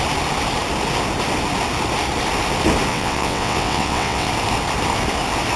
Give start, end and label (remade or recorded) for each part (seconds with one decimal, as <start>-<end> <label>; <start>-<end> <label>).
0.0-2.9 recorded; 2.9-4.3 remade; 4.3-5.6 recorded